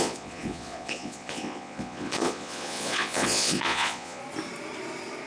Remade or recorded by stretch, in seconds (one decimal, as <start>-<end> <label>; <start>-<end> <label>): 0.0-4.2 remade; 4.2-5.3 recorded